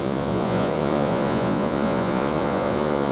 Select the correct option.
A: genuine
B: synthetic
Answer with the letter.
B